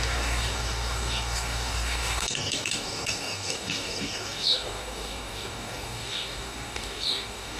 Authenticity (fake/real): fake